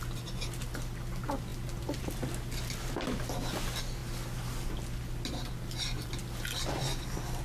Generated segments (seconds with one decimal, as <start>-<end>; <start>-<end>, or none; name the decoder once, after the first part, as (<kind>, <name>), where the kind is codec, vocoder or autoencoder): none